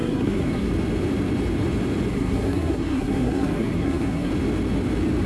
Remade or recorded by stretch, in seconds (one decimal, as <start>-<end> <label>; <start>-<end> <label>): 0.0-0.7 remade; 0.7-2.1 recorded; 2.1-4.3 remade; 4.3-5.3 recorded